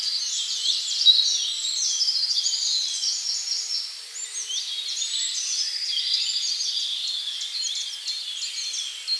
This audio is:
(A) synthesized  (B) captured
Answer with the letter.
B